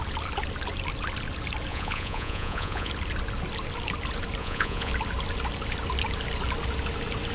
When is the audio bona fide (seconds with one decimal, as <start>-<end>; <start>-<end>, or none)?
0.0-1.7; 2.9-4.4; 4.9-7.3